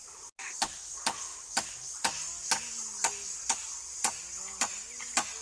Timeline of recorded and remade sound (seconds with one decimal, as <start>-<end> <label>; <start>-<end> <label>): 0.0-5.4 recorded